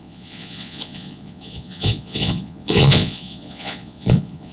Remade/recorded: remade